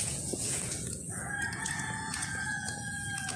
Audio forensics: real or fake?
fake